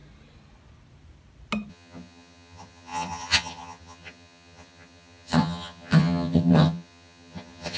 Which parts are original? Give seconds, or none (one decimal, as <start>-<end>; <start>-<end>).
0.0-1.7